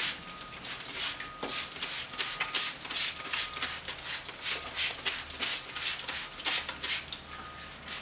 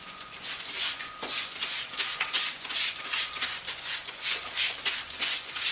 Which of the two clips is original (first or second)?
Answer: first